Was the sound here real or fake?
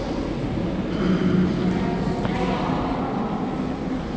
real